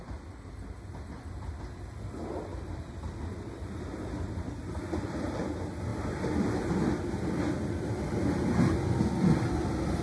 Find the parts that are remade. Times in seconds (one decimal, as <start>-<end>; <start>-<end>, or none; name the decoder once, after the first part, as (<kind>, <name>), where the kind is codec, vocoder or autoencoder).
none